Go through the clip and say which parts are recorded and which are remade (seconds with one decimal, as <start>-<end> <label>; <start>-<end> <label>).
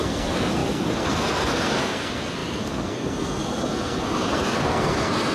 0.0-5.3 remade